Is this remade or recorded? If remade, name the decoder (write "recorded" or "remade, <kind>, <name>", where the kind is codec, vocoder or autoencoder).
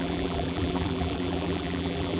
remade, vocoder, BigVGAN v2